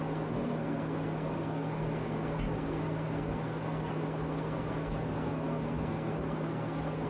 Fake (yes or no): yes